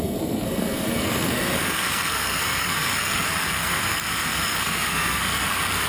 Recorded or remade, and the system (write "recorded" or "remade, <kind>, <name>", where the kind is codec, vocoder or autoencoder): remade, codec, SNAC